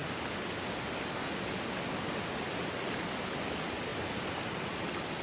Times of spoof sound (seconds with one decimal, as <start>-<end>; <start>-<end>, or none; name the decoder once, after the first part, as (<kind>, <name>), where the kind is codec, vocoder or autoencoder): none